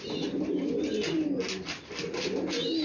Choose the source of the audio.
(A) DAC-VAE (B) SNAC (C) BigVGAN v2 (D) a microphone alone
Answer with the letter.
D